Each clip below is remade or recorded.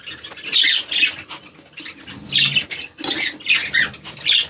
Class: recorded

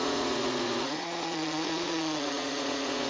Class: remade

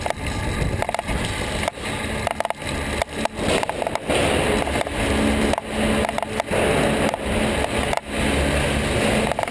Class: recorded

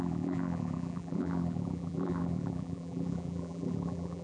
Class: remade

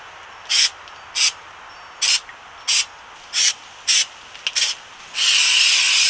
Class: recorded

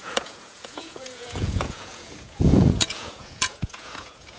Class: remade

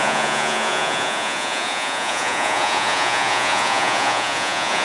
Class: remade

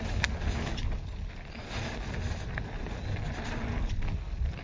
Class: recorded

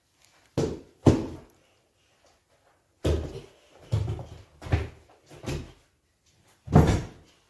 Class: recorded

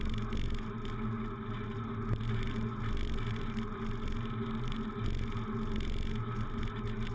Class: recorded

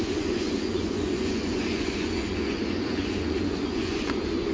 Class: remade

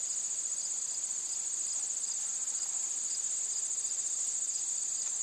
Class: recorded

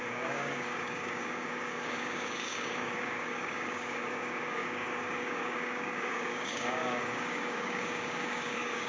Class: remade